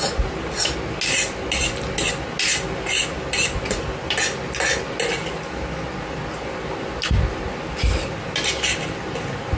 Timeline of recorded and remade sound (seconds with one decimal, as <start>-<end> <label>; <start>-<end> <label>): 0.0-9.6 recorded